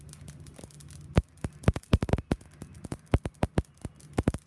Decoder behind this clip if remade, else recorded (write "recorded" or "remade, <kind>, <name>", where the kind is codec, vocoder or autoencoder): recorded